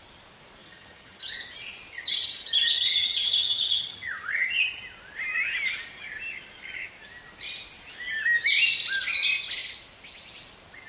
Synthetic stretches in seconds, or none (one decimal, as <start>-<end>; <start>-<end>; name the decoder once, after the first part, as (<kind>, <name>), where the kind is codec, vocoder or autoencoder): 0.6-1.3 (vocoder, HiFi-GAN); 1.9-4.8